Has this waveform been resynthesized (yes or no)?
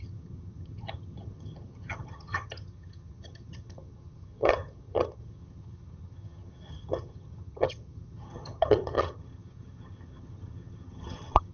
yes